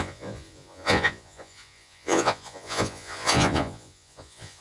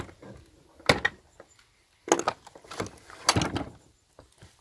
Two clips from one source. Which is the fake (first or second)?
first